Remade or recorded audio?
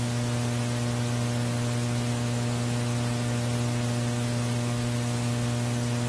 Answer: recorded